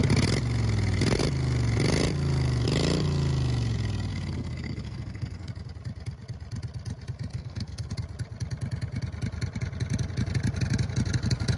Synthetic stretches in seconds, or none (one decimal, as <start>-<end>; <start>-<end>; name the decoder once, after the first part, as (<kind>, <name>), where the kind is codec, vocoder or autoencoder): 4.1-5.5 (codec, SNAC); 7.3-7.9